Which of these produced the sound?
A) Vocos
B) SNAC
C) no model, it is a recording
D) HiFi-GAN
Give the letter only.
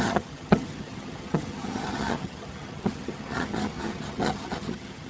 D